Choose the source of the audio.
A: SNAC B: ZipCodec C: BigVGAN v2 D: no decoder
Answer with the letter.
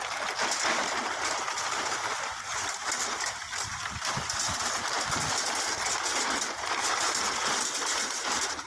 D